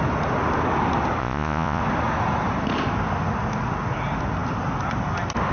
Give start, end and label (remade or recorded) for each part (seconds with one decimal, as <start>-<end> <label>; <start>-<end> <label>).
0.0-1.2 recorded; 1.2-1.8 remade; 1.8-5.5 recorded